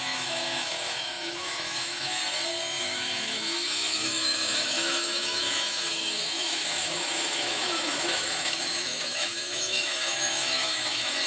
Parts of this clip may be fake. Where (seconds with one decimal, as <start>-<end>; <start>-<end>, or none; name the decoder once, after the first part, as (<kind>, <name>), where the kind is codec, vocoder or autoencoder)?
0.0-2.2 (autoencoder, DAC-VAE); 2.8-11.3